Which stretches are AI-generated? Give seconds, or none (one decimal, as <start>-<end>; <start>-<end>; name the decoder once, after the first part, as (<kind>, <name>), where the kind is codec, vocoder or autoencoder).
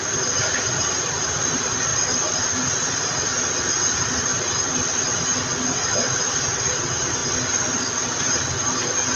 1.9-3.0 (vocoder, BigVGAN v2); 4.3-5.0; 7.2-8.4